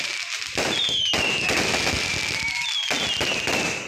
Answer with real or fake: real